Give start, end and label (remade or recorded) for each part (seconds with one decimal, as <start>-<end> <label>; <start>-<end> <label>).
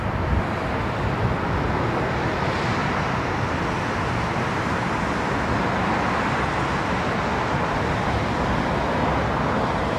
0.0-2.8 recorded; 2.8-3.4 remade; 3.4-10.0 recorded